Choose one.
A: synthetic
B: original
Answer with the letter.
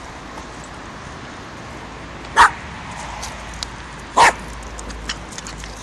B